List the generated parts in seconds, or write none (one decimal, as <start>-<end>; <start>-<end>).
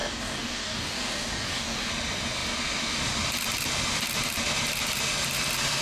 0.0-1.9